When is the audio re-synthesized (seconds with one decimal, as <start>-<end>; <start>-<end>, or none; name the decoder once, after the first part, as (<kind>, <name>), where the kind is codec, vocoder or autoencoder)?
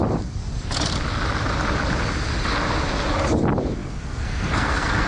3.8-5.1 (codec, SNAC)